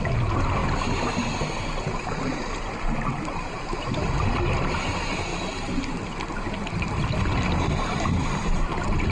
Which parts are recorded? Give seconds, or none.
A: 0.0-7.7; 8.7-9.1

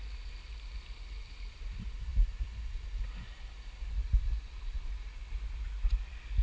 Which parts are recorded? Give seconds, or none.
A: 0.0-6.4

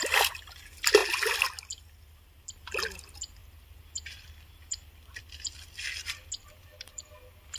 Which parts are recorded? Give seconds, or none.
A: 0.0-3.4; 7.0-7.6

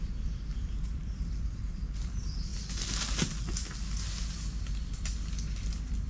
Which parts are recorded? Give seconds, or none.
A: 2.5-4.9